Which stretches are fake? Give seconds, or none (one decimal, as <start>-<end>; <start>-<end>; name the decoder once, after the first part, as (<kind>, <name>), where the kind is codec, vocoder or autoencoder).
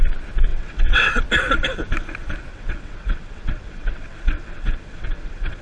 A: 0.5-1.2 (vocoder, WaveNeXt); 2.5-5.6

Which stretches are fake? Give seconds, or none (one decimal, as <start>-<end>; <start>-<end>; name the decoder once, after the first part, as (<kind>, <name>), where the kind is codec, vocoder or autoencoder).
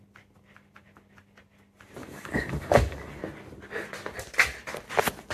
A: 2.0-3.2 (codec, DAC)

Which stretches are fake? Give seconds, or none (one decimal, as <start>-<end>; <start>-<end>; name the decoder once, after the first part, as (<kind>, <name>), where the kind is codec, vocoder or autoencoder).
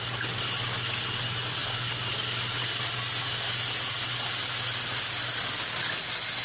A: none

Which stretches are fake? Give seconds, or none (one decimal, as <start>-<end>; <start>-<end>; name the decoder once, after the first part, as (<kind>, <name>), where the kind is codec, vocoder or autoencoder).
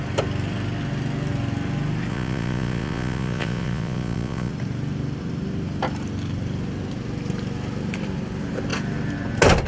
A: 2.1-4.5 (vocoder, Vocos)